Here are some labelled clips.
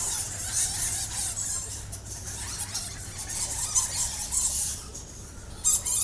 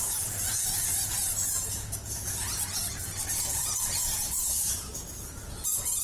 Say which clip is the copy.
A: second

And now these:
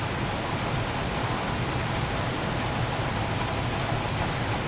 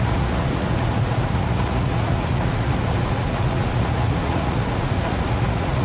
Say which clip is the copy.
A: second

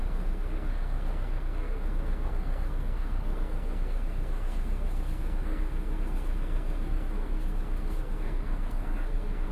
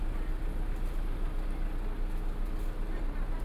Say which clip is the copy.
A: first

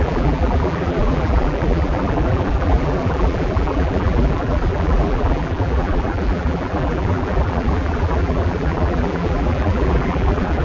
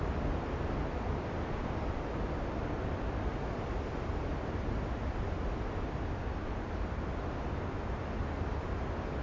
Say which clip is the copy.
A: first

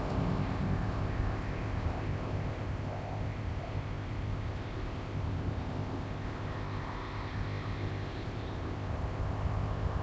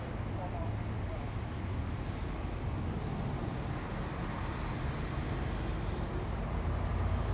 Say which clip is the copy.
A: first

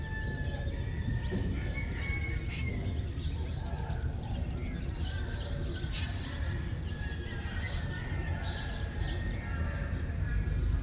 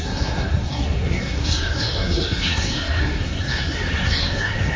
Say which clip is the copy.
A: second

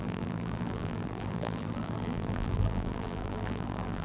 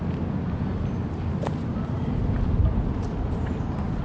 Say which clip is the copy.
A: first